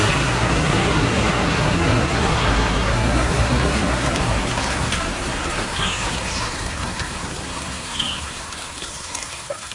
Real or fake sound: fake